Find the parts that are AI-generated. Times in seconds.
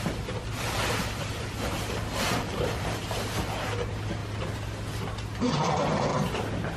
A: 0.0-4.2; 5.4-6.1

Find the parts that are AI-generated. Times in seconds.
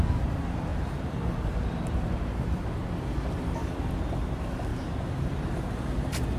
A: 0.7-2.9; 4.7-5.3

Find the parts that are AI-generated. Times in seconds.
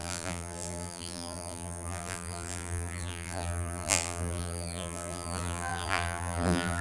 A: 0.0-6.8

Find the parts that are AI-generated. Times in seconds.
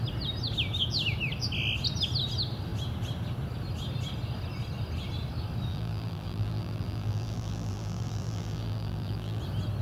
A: 5.7-9.4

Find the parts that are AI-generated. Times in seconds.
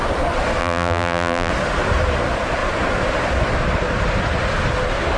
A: 0.6-1.5